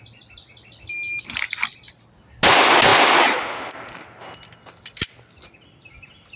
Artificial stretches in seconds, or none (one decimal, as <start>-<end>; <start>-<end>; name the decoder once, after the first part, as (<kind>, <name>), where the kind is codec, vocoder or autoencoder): none